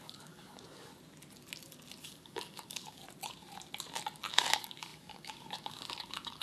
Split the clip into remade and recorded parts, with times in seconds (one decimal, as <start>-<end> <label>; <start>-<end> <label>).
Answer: 0.0-0.9 remade; 0.9-2.0 recorded; 2.0-3.0 remade; 3.0-4.3 recorded; 4.3-6.4 remade